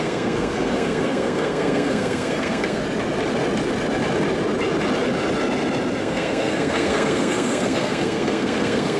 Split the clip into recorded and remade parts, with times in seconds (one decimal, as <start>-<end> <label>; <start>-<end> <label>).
0.0-2.8 remade; 2.8-6.0 recorded; 6.0-9.0 remade